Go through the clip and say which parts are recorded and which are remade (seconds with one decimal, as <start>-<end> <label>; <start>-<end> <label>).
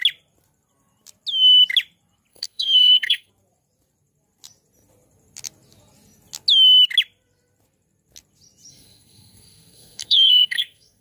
0.0-2.3 recorded; 2.3-3.3 remade; 3.3-8.7 recorded; 8.7-11.0 remade